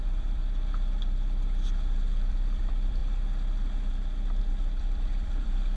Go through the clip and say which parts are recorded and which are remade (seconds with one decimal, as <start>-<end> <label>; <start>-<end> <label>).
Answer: 0.0-0.4 remade; 0.4-2.3 recorded; 2.3-3.0 remade; 3.0-4.4 recorded; 4.4-5.8 remade